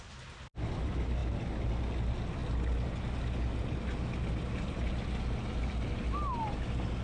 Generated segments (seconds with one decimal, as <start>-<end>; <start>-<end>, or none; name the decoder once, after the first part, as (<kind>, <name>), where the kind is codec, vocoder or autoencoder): none